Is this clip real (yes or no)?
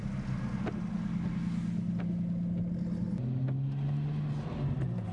yes